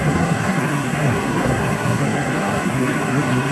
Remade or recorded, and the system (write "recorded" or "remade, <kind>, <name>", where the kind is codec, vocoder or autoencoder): remade, codec, SNAC